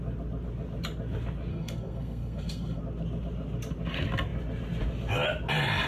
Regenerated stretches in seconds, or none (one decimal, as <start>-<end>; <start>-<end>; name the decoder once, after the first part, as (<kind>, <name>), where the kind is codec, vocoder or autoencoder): 1.5-2.8 (codec, SNAC)